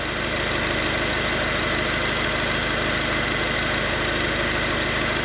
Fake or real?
real